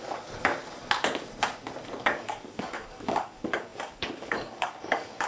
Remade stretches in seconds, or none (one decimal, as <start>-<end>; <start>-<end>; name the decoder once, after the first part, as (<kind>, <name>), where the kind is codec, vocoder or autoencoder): 0.0-0.6 (codec, DAC); 2.0-5.3